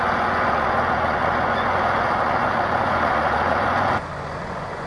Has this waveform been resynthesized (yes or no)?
yes